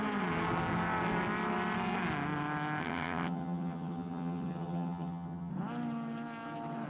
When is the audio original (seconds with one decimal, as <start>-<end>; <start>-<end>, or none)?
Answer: 0.0-2.8; 5.5-6.9